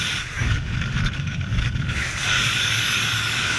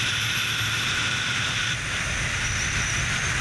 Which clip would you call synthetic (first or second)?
first